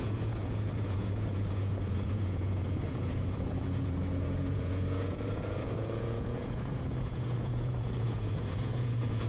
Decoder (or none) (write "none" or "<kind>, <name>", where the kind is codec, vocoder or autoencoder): vocoder, Vocos